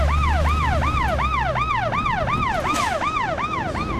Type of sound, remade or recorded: recorded